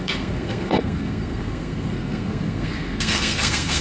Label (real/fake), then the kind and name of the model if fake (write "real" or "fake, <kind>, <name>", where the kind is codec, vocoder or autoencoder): fake, codec, SNAC